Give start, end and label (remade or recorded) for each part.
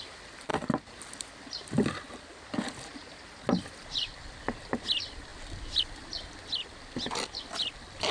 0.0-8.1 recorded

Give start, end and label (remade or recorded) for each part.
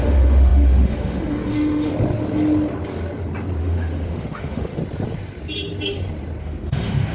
0.0-1.9 remade; 1.9-3.6 recorded; 3.6-4.8 remade; 4.8-6.4 recorded; 6.4-7.1 remade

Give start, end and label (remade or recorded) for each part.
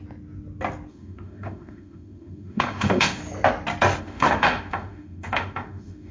0.0-0.9 recorded; 0.9-3.2 remade; 3.2-4.0 recorded; 4.0-6.1 remade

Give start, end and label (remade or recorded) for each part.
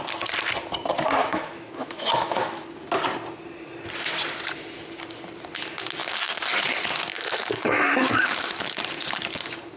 0.0-1.2 recorded; 1.2-2.6 remade; 2.6-7.1 recorded; 7.1-8.8 remade; 8.8-9.8 recorded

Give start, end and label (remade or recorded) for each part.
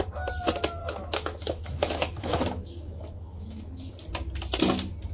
0.0-0.8 recorded; 0.8-3.9 remade; 3.9-5.1 recorded